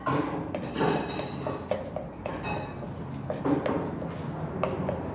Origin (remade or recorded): recorded